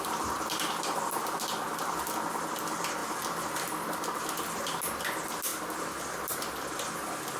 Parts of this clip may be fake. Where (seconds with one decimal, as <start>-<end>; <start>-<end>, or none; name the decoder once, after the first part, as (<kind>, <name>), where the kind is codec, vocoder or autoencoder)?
none